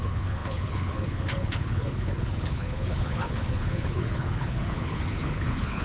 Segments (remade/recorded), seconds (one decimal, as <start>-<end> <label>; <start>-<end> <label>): 0.0-5.8 remade